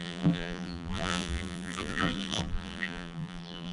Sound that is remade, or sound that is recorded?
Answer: remade